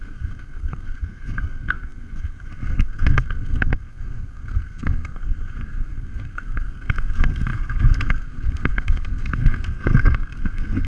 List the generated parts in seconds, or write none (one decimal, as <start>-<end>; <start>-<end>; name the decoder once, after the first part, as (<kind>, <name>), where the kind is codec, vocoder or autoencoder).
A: 0.0-10.9 (codec, SNAC)